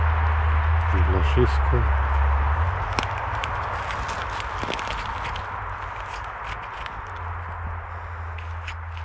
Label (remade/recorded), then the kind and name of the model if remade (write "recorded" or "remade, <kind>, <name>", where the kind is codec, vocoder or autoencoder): recorded